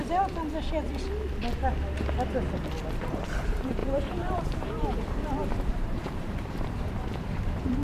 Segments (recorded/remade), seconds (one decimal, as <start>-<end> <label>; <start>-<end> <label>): 0.0-3.0 recorded; 3.0-7.8 remade